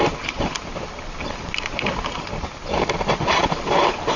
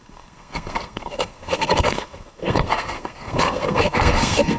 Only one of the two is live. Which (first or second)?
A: first